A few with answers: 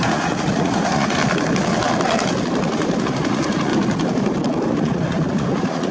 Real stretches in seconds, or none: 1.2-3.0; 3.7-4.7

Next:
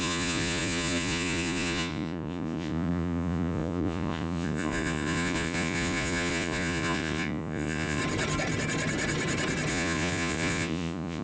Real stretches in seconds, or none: 8.0-9.7

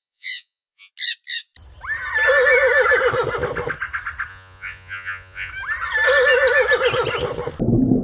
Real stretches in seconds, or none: 0.9-4.3; 5.5-8.0

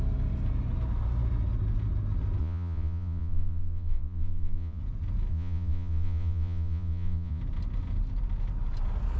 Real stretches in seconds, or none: 0.0-2.4; 4.8-5.3; 7.4-9.2

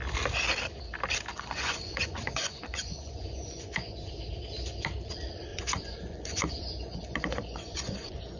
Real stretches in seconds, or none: 0.0-1.3; 4.1-5.5

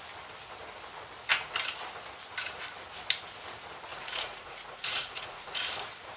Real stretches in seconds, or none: 0.0-3.9; 5.6-6.2

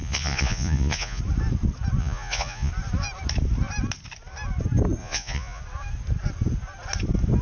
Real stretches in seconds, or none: 1.2-2.0; 2.7-5.0; 5.6-7.4

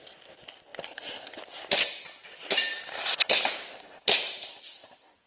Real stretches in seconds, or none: 0.0-5.3